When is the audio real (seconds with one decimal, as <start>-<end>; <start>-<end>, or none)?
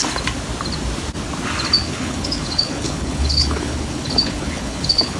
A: 0.0-1.8